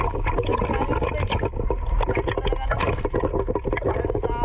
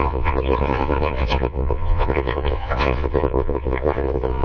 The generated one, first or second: second